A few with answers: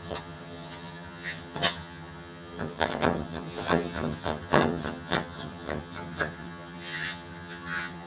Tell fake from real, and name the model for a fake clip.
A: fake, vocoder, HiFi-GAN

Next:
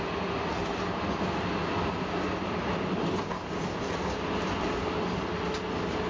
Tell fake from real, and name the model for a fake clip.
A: real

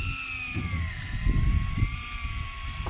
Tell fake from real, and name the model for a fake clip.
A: real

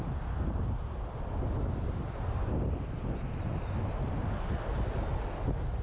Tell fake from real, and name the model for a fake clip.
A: real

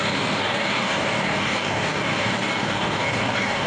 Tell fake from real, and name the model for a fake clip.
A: fake, codec, DAC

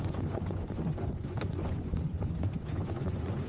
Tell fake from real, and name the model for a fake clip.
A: fake, vocoder, Vocos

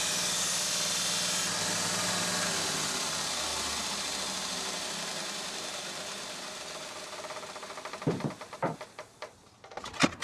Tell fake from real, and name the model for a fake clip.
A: real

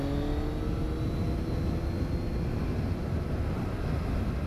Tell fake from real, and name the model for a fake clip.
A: real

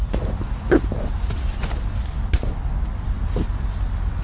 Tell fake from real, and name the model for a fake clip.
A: real